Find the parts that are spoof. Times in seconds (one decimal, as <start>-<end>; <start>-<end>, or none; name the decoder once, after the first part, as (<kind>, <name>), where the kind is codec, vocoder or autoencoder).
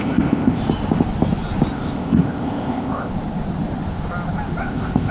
0.0-0.6 (codec, ZipCodec); 1.7-3.1; 4.6-5.1